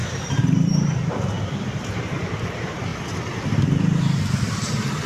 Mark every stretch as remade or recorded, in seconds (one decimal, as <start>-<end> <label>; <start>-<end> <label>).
0.0-2.9 remade; 2.9-5.1 recorded

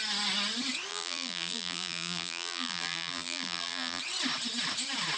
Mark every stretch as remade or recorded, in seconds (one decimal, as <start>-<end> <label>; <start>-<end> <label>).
0.0-0.9 recorded; 0.9-4.0 remade; 4.0-5.2 recorded

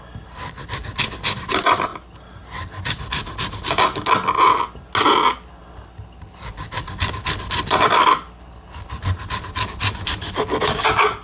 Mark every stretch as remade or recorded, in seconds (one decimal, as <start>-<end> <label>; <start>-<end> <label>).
0.0-1.9 remade; 1.9-6.2 recorded; 6.2-11.2 remade

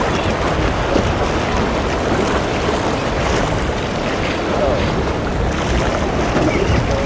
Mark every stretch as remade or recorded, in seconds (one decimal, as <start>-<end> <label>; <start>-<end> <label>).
0.0-7.1 recorded

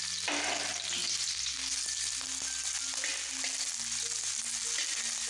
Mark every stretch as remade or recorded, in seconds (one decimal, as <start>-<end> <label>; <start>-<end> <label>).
0.0-5.3 recorded